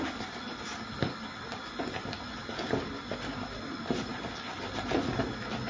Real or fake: real